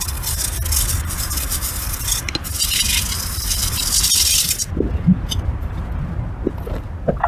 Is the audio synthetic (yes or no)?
no